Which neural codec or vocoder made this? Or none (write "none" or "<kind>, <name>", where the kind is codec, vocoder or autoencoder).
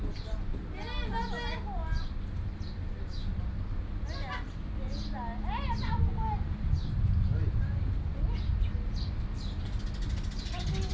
none